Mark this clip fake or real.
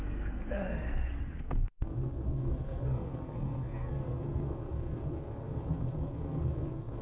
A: fake